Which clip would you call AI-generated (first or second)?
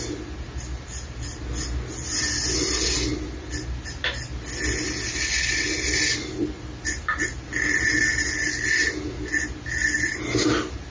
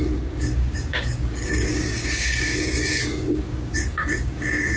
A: second